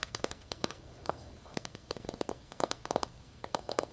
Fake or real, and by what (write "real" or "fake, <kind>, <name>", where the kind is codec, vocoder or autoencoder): fake, codec, SNAC